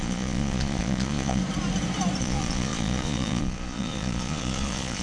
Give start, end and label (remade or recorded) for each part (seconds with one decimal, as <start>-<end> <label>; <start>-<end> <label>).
0.0-1.4 remade; 1.4-2.2 recorded; 2.2-5.0 remade